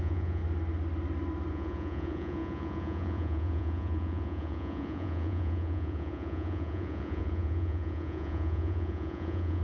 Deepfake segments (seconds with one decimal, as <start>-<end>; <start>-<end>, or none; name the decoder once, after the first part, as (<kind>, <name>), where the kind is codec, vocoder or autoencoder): 0.0-0.4 (vocoder, Vocos); 1.5-9.6